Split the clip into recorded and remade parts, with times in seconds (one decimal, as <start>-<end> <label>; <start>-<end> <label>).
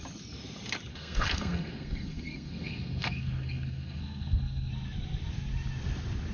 0.0-0.9 recorded; 0.9-4.7 remade; 4.7-6.3 recorded